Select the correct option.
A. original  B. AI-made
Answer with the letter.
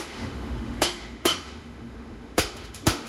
B